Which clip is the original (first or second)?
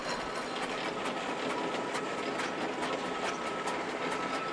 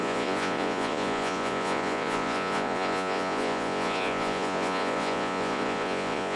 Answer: first